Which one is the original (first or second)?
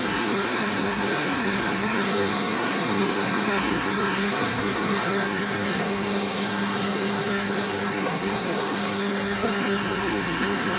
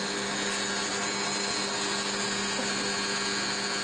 second